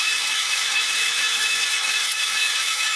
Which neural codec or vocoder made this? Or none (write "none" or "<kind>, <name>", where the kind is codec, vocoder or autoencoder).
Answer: autoencoder, DAC-VAE